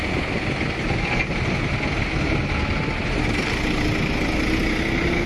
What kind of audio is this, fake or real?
real